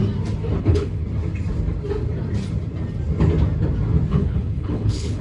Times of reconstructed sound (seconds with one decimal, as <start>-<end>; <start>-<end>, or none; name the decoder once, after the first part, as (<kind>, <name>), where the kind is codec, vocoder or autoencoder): 0.6-1.0 (codec, HILCodec); 4.1-5.2